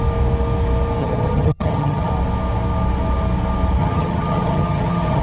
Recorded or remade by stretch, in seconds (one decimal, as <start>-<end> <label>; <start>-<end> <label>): 0.0-1.0 recorded; 1.0-2.1 remade; 2.1-3.8 recorded; 3.8-5.2 remade